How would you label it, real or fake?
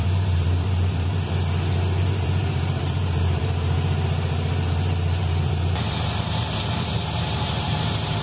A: fake